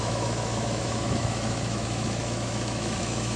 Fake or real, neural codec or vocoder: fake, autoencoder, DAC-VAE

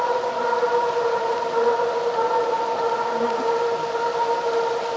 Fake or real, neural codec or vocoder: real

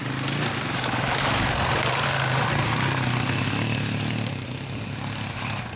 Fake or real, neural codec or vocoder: real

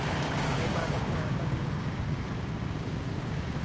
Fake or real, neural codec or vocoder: fake, codec, DAC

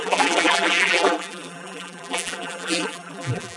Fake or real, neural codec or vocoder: fake, vocoder, BigVGAN v2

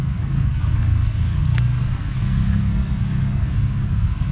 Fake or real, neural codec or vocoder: fake, codec, SNAC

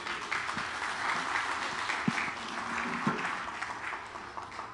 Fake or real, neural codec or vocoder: real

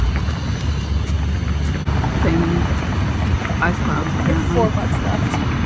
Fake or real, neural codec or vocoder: real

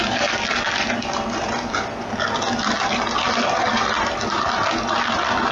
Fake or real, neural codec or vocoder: real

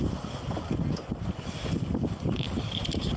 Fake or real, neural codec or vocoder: real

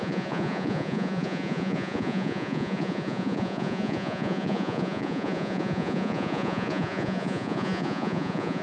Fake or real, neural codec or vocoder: fake, vocoder, Vocos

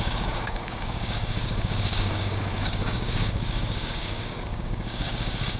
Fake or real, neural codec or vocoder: fake, codec, DAC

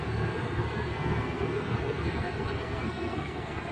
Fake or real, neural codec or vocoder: fake, codec, SNAC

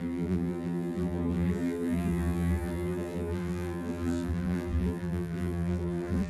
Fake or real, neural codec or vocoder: fake, vocoder, BigVGAN v2